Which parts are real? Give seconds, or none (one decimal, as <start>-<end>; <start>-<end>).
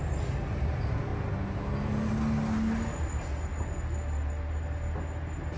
0.0-5.6